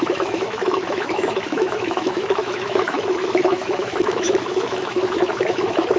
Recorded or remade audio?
remade